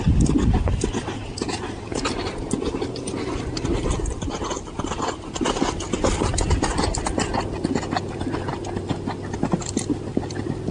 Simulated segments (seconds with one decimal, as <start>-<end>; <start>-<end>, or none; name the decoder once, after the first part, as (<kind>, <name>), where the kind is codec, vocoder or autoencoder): 1.9-3.9 (vocoder, BigVGAN v2)